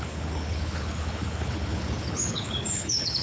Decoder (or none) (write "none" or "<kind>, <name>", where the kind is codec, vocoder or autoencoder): codec, HILCodec